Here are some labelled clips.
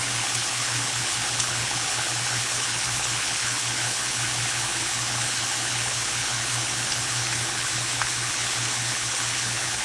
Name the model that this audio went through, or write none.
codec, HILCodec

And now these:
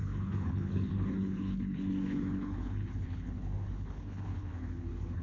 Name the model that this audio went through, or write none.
codec, HILCodec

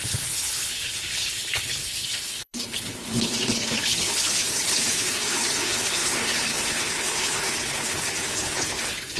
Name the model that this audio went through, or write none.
codec, HILCodec